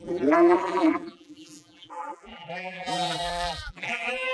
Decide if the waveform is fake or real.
fake